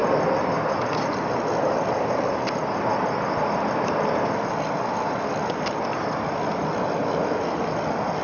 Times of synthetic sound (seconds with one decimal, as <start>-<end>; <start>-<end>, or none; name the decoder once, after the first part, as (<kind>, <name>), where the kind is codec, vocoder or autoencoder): none